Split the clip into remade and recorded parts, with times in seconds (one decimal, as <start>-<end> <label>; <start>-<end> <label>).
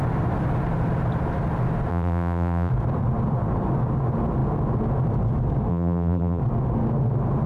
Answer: 0.0-1.9 recorded; 1.9-2.7 remade; 2.7-5.7 recorded; 5.7-6.4 remade; 6.4-7.5 recorded